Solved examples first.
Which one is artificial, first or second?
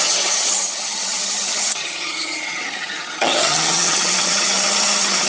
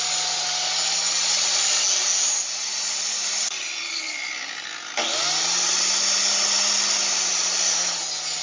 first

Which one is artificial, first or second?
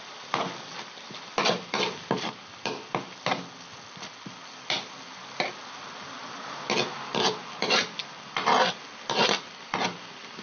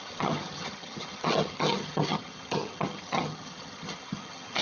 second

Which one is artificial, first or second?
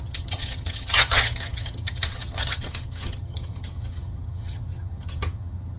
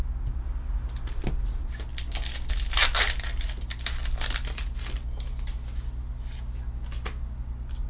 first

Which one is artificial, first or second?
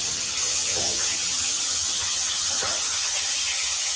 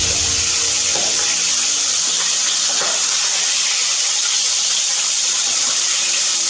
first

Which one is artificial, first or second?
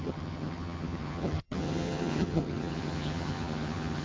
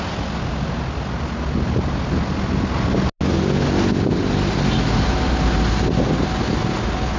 first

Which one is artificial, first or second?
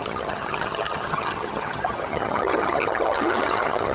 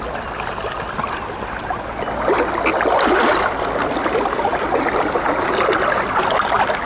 first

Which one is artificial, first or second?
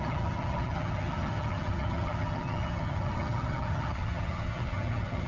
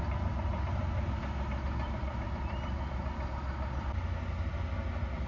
first